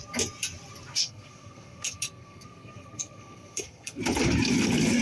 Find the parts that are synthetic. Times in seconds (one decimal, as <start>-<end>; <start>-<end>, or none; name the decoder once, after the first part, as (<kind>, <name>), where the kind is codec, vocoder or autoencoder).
1.0-4.0 (codec, SNAC)